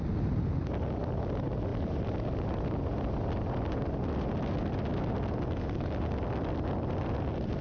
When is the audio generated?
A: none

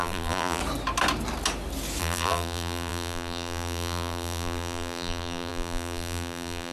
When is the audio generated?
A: 0.0-0.6; 2.0-6.7